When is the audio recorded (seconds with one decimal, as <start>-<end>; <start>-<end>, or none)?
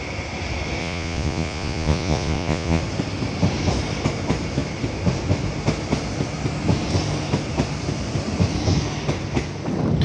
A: 0.0-0.8; 2.8-10.0